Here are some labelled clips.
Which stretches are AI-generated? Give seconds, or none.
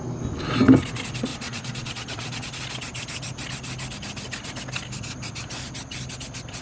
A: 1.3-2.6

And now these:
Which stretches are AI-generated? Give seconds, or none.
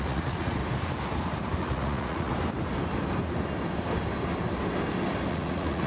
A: 0.0-0.6; 1.6-2.3; 5.3-5.9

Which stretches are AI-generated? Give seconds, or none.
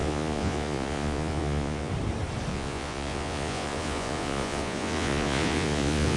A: 0.0-1.9; 2.5-6.2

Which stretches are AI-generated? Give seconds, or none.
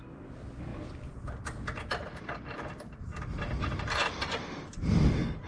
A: none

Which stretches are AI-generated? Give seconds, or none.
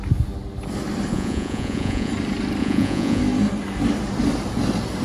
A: 1.1-2.1; 2.6-3.2